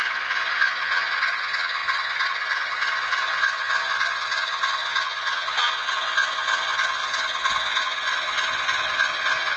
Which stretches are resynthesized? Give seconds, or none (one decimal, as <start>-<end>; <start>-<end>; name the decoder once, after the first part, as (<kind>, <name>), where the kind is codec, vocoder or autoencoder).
0.0-9.6 (vocoder, Vocos)